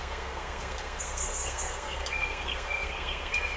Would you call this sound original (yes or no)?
no